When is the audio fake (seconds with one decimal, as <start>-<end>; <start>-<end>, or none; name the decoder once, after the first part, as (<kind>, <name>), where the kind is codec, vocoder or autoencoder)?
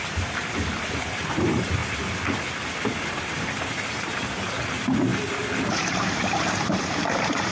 0.0-1.8 (vocoder, BigVGAN v2); 3.0-5.1; 5.7-7.5